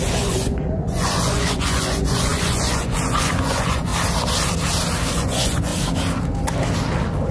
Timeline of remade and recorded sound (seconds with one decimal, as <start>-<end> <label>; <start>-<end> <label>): 0.0-3.9 remade; 3.9-5.1 recorded; 5.1-5.7 remade; 5.7-7.3 recorded